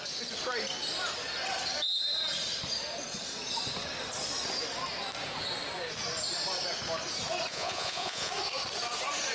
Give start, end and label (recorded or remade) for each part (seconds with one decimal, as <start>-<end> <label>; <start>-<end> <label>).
0.0-7.5 recorded; 7.5-8.3 remade; 8.3-9.3 recorded